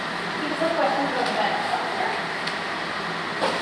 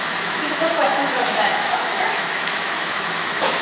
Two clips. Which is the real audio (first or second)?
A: first